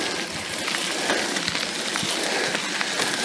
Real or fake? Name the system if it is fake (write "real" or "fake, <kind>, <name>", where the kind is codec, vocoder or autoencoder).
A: real